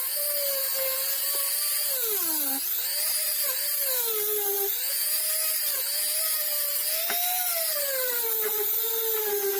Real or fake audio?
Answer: real